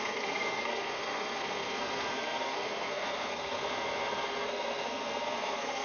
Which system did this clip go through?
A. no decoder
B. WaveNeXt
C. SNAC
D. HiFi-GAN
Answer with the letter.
C